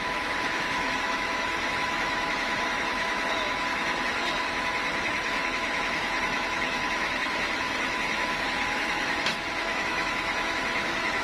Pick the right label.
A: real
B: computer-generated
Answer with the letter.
B